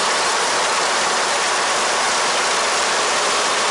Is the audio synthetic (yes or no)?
no